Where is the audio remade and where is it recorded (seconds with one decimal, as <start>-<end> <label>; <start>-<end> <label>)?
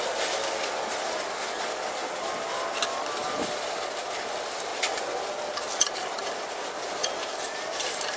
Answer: 0.0-7.0 recorded; 7.0-8.2 remade